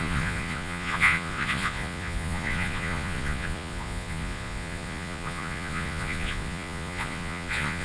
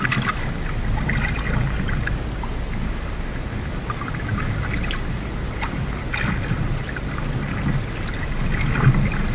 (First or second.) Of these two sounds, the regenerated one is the first